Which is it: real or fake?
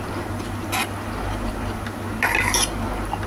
real